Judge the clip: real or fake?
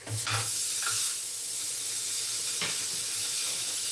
fake